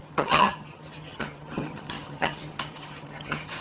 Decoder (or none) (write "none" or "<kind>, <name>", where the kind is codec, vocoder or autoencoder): vocoder, HiFi-GAN